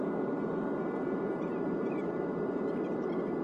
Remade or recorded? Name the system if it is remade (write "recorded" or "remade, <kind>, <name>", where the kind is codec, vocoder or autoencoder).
recorded